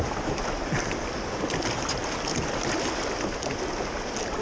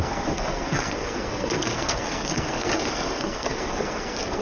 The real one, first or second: first